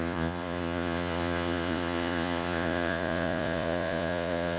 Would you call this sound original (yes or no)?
no